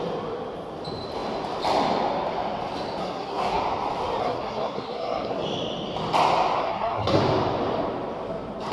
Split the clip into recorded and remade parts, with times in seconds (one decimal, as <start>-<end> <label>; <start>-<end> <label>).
0.0-3.0 recorded; 3.0-3.6 remade; 3.6-4.2 recorded; 4.2-5.4 remade; 5.4-6.6 recorded; 6.6-7.2 remade; 7.2-8.7 recorded